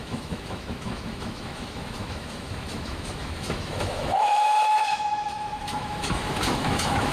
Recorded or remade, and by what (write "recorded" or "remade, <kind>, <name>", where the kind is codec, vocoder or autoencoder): remade, autoencoder, DAC-VAE